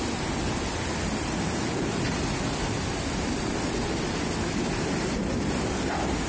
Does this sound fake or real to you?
real